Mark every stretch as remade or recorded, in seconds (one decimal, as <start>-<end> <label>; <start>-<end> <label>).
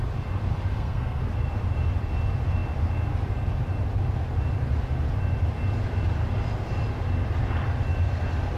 0.0-0.7 recorded; 0.7-1.2 remade; 1.2-8.6 recorded